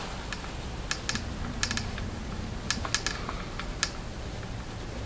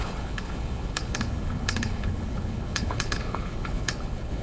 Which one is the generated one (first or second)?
second